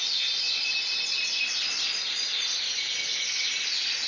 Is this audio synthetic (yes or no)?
no